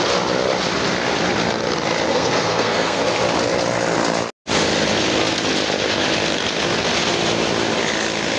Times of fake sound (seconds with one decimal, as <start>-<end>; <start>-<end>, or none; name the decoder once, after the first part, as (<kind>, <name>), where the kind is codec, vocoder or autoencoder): 2.1-3.0 (codec, SNAC)